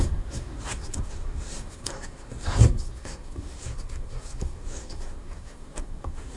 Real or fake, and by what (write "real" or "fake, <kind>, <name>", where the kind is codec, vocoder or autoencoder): fake, codec, SNAC